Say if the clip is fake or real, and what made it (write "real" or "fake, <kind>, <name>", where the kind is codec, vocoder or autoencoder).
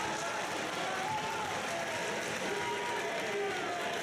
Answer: real